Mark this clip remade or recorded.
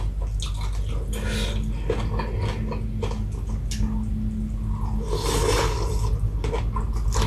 recorded